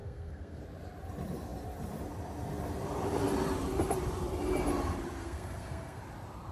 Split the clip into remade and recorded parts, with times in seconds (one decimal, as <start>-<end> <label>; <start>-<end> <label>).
0.0-0.6 remade; 0.6-5.2 recorded; 5.2-6.0 remade; 6.0-6.5 recorded